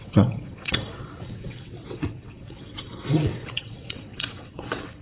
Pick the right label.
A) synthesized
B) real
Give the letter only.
A